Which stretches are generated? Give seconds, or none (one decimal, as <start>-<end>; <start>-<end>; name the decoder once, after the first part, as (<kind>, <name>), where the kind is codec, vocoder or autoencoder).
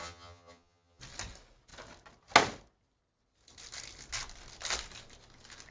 0.0-1.0 (vocoder, HiFi-GAN)